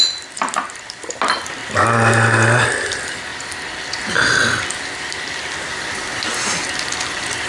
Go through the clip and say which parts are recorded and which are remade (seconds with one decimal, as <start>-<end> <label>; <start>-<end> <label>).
0.0-7.5 recorded